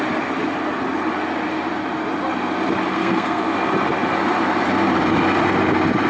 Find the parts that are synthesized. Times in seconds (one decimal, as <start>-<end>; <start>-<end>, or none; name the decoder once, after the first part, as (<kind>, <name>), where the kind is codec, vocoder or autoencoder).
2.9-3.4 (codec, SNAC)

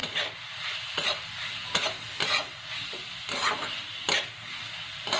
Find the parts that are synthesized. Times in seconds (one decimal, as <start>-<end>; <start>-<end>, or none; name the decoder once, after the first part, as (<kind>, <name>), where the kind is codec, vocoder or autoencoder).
none

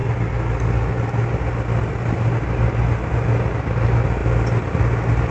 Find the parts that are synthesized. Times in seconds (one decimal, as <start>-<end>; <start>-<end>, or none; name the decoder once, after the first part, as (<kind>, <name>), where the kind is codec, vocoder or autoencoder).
none